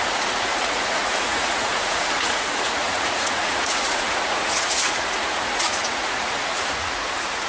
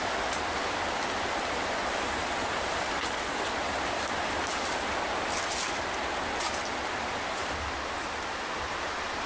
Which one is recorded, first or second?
second